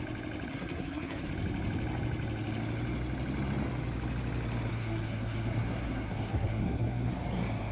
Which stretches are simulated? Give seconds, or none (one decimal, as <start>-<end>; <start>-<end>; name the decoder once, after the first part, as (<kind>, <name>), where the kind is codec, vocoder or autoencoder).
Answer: 0.5-1.3 (codec, SNAC); 4.7-7.1